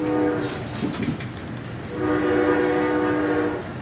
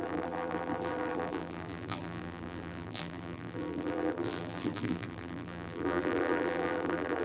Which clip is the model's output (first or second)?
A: second